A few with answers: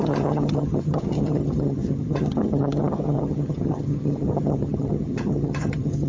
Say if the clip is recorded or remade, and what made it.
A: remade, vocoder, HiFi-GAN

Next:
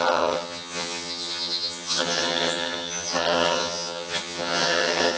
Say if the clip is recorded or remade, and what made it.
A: remade, vocoder, HiFi-GAN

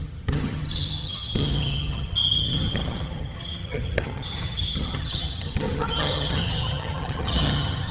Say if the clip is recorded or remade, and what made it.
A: remade, vocoder, HiFi-GAN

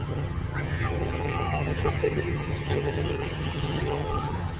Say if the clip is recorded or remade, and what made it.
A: remade, vocoder, HiFi-GAN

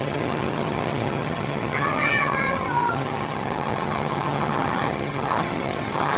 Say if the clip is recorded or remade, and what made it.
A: remade, vocoder, HiFi-GAN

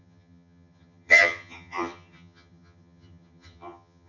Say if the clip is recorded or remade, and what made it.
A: remade, vocoder, HiFi-GAN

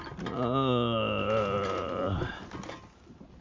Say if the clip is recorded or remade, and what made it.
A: recorded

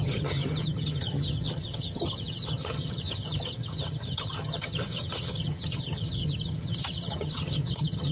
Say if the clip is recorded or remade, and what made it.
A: remade, vocoder, HiFi-GAN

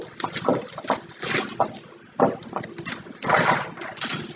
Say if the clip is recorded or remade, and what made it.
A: recorded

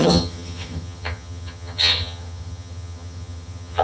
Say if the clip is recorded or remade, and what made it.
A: remade, vocoder, HiFi-GAN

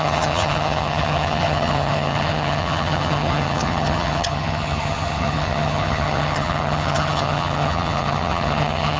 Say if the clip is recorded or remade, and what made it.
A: remade, vocoder, HiFi-GAN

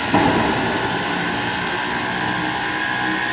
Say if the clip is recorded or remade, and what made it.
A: recorded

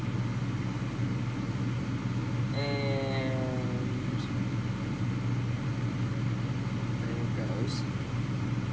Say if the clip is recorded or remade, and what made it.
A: recorded